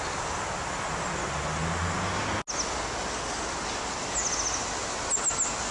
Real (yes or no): yes